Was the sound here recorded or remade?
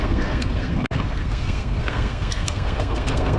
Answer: remade